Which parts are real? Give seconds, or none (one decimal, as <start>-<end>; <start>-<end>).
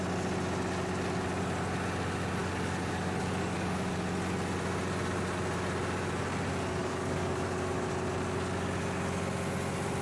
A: 0.0-2.4; 3.9-6.8; 7.9-10.0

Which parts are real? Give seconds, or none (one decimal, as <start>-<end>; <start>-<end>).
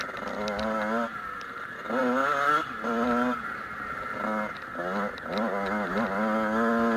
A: 0.0-7.0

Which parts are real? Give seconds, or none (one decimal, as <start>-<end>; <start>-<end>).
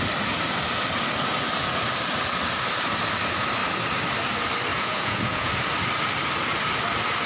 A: 0.0-4.7; 5.5-7.3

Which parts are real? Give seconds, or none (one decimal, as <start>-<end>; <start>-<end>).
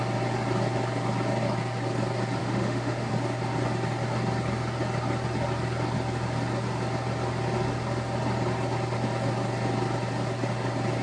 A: 0.0-2.4; 3.1-11.0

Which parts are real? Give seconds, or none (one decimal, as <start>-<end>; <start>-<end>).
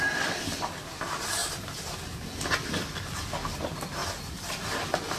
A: 0.0-5.2